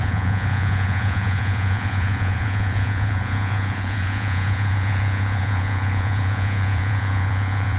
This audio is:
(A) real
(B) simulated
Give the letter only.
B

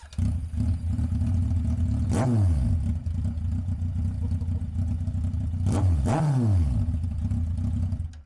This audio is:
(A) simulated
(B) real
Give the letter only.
B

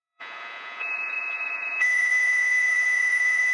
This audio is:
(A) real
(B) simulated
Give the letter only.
B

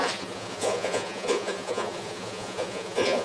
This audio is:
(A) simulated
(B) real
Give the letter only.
A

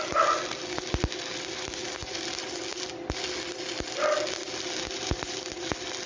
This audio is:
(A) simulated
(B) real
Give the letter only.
B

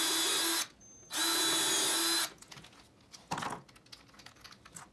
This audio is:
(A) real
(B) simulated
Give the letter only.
A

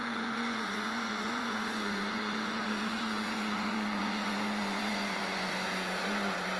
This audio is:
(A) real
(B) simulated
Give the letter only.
B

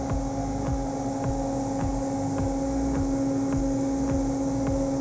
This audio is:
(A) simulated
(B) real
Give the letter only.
B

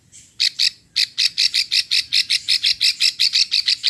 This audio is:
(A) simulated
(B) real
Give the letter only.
B